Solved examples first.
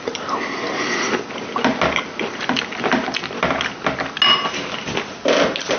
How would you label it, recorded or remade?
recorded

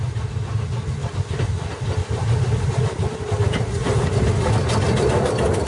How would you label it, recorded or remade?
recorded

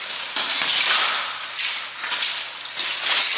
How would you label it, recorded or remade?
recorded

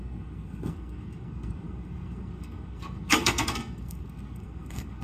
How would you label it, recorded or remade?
remade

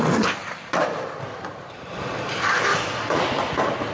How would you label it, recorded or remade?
remade